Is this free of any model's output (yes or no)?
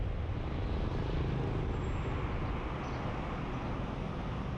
yes